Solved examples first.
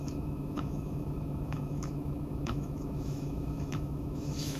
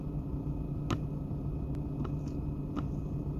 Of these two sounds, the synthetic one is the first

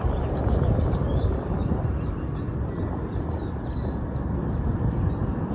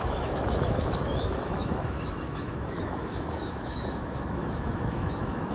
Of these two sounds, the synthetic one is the second